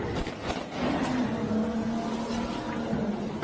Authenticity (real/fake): real